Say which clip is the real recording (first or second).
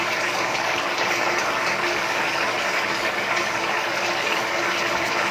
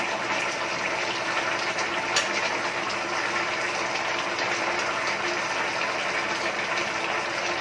second